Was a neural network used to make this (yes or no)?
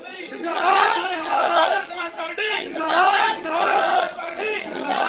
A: yes